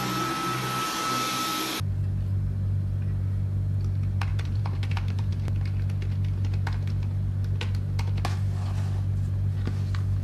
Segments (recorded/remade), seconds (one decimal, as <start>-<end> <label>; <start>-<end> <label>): 0.0-4.3 recorded; 4.3-5.3 remade; 5.3-10.2 recorded